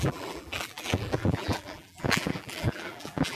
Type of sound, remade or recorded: remade